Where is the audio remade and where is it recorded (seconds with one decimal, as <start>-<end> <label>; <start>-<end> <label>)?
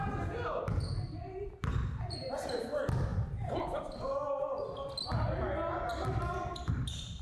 0.0-7.2 recorded